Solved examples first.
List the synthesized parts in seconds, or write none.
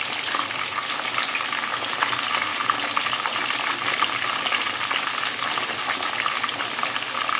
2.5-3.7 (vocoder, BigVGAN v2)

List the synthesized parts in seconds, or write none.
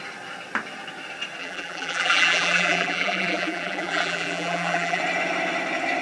1.4-5.0 (vocoder, BigVGAN v2)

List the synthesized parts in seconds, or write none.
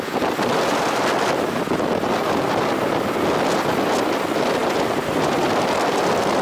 none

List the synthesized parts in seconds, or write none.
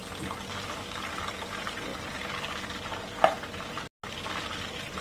none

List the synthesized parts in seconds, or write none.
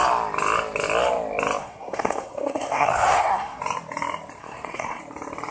1.6-3.6 (codec, SNAC); 4.4-5.0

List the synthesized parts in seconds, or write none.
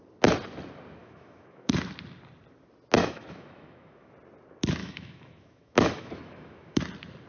1.0-1.7 (autoencoder, DAC-VAE); 3.0-4.1; 4.8-6.8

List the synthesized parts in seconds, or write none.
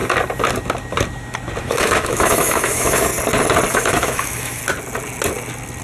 1.6-3.1 (autoencoder, DAC-VAE); 3.7-4.6